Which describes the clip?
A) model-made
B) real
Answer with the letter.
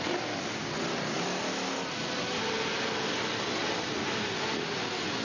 B